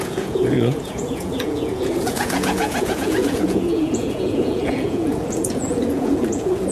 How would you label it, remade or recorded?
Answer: remade